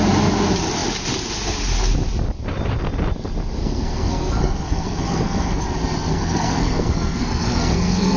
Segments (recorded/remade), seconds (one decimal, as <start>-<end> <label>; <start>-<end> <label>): 0.0-3.6 recorded; 3.6-5.6 remade; 5.6-6.1 recorded; 6.1-8.2 remade